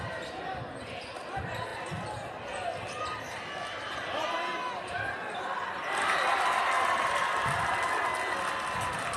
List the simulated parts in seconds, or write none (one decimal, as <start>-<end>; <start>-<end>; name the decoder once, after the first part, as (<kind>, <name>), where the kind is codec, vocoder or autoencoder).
none